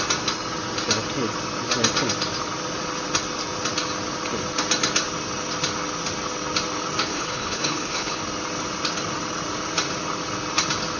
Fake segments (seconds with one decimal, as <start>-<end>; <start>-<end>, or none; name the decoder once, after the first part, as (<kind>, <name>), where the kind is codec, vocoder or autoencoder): 7.1-8.2 (codec, HILCodec)